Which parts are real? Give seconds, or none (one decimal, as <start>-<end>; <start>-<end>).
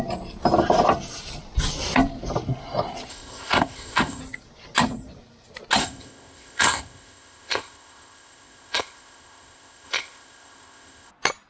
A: 0.0-3.1; 4.2-5.8; 11.1-11.5